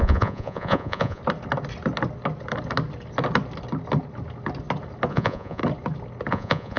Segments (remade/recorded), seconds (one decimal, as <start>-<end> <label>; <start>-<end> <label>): 0.0-1.2 remade; 1.2-5.1 recorded; 5.1-5.6 remade; 5.6-6.3 recorded; 6.3-6.8 remade